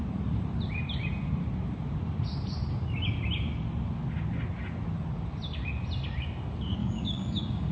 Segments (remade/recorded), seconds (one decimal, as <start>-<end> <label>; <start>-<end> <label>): 0.0-6.8 recorded; 6.8-7.7 remade